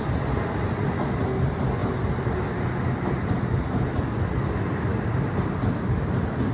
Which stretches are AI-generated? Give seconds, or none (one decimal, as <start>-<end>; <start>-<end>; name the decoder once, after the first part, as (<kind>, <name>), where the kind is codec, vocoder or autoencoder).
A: none